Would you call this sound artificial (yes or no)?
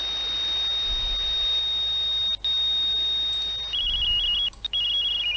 no